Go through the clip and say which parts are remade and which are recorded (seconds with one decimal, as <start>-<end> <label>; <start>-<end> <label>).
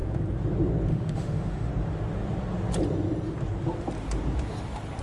0.0-0.9 recorded; 0.9-1.7 remade; 1.7-5.0 recorded